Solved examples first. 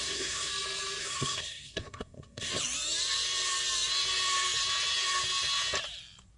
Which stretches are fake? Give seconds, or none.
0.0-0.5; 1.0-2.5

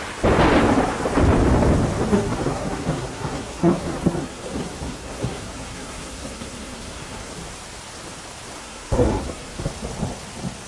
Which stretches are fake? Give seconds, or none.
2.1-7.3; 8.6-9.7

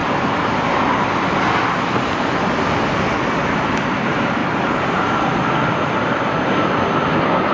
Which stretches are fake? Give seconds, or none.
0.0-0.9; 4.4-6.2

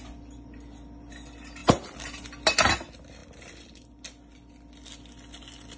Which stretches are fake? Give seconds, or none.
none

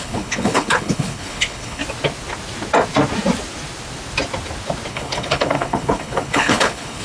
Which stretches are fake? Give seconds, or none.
0.0-1.8; 4.9-7.0

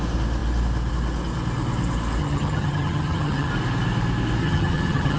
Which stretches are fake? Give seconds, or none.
2.2-3.5; 4.4-5.2

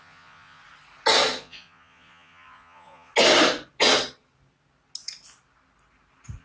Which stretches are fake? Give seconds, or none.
0.0-0.6; 1.4-3.1

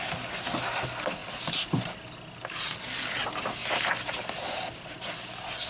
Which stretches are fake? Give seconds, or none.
none